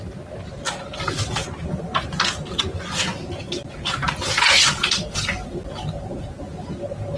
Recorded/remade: recorded